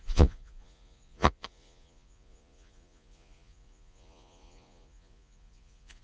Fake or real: fake